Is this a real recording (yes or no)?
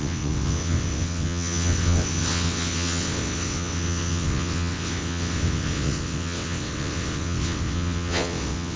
no